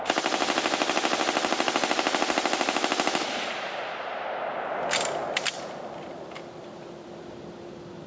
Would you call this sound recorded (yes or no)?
yes